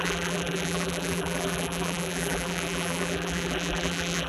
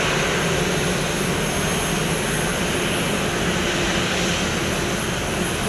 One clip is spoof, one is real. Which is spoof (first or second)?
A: first